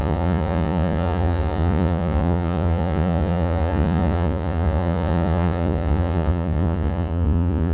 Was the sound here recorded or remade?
remade